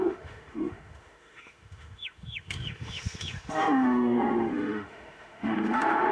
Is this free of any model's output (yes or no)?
no